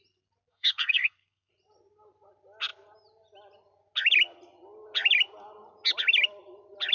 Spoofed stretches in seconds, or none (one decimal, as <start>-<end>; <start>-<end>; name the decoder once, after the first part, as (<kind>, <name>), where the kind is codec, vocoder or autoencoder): 0.5-1.5 (codec, SNAC)